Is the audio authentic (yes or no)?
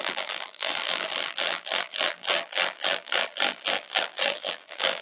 no